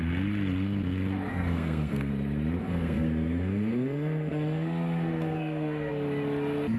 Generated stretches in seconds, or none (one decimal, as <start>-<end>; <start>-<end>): 1.3-2.1; 2.6-5.9

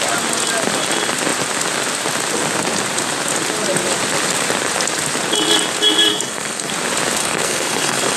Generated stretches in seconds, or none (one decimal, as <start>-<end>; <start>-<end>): 6.1-6.7; 7.2-8.2

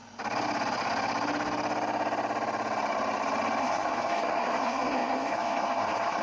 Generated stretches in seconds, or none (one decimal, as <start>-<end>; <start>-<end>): 3.6-6.2

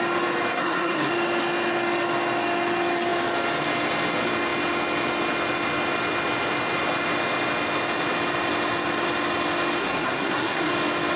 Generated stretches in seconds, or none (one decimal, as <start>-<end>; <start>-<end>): 0.5-1.1; 9.8-10.7

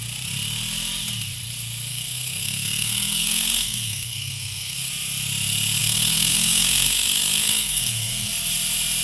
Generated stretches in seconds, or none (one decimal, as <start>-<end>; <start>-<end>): 1.9-4.9; 5.8-8.3

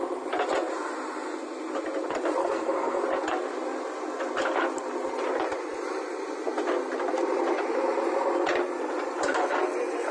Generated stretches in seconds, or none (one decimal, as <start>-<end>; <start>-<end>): 2.4-3.0

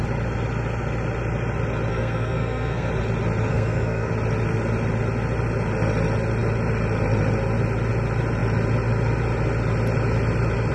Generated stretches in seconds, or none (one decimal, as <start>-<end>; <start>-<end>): 1.9-2.9; 3.5-4.1